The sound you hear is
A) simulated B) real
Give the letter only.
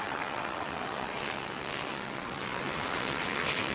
A